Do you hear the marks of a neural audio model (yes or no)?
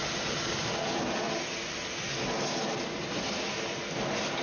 no